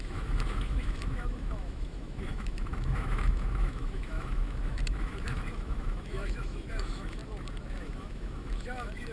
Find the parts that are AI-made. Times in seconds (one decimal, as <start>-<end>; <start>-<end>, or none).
0.0-7.2; 7.7-9.1